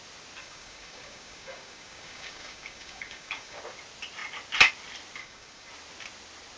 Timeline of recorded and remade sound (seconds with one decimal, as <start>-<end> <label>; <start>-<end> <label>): 0.0-0.4 recorded; 0.4-3.6 remade; 3.6-5.2 recorded; 5.2-5.7 remade; 5.7-6.6 recorded